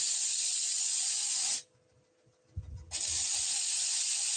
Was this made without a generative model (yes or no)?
yes